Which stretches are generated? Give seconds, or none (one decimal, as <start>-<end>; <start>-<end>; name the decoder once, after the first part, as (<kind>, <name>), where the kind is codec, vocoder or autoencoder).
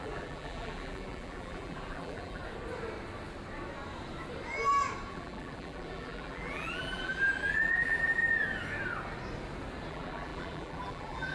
0.0-2.4 (vocoder, BigVGAN v2); 5.1-8.2; 9.9-11.3